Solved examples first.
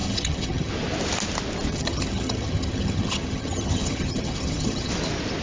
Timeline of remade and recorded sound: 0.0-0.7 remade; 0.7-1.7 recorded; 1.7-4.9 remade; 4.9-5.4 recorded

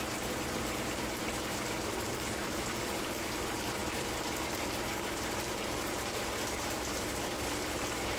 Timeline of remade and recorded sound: 0.0-8.2 remade

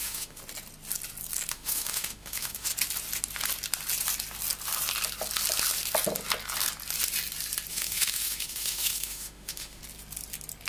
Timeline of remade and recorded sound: 0.0-0.4 remade; 0.4-1.5 recorded; 1.5-2.7 remade; 2.7-7.7 recorded; 7.7-9.8 remade; 9.8-10.7 recorded

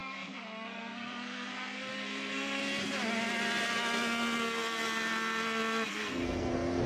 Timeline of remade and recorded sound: 0.0-2.6 remade; 2.6-5.9 recorded; 5.9-6.9 remade

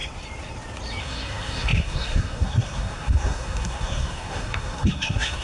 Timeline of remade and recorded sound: 0.0-1.0 recorded; 1.0-5.4 remade

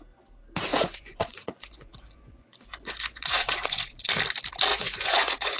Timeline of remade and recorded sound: 0.0-0.7 recorded; 0.7-4.1 remade; 4.1-4.7 recorded; 4.7-5.6 remade